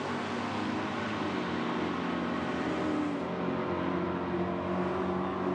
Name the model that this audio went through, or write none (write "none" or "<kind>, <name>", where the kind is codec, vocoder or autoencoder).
none